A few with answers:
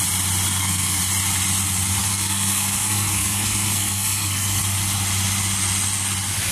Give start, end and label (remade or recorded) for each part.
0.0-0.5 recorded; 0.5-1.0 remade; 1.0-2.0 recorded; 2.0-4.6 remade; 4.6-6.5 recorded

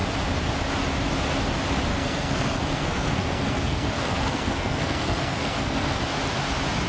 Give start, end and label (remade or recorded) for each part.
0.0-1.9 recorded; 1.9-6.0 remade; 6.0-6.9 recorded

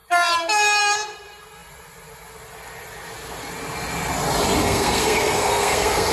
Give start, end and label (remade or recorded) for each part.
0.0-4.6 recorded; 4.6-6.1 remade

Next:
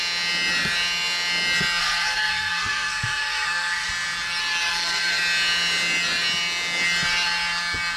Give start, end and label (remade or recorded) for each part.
0.0-1.8 recorded; 1.8-3.9 remade; 3.9-4.7 recorded; 4.7-5.2 remade; 5.2-8.0 recorded

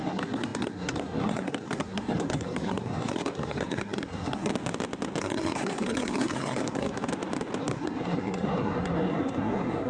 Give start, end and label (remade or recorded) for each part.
0.0-4.5 remade; 4.5-5.2 recorded; 5.2-7.1 remade; 7.1-7.6 recorded; 7.6-9.9 remade